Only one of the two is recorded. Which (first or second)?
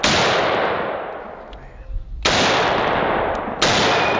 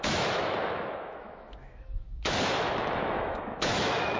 first